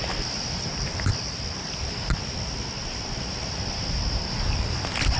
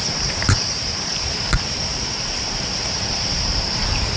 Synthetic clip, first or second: second